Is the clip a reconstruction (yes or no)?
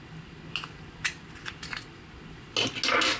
no